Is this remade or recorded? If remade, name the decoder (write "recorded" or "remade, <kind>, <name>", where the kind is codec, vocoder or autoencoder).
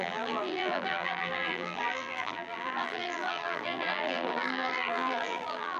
remade, vocoder, BigVGAN v2